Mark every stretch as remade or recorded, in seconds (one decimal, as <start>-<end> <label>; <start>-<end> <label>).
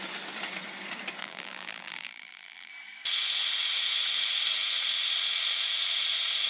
0.0-1.2 recorded; 1.2-2.7 remade; 2.7-6.5 recorded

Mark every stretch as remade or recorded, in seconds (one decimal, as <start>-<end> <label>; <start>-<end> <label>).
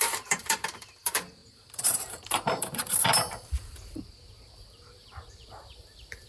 0.0-6.3 remade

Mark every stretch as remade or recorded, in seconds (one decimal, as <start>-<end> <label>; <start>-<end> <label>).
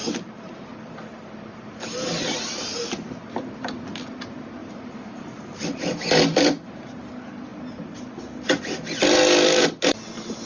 0.0-3.3 remade; 3.3-4.6 recorded; 4.6-7.1 remade; 7.1-10.5 recorded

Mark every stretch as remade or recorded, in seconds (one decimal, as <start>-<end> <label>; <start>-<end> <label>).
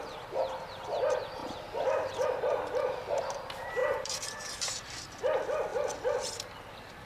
0.0-3.8 recorded; 3.8-5.2 remade; 5.2-7.1 recorded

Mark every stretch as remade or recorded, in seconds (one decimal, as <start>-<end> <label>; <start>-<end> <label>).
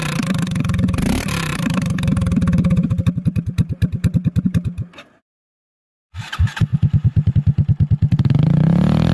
0.0-1.5 recorded; 1.5-4.4 remade; 4.4-6.7 recorded; 6.7-7.3 remade; 7.3-9.1 recorded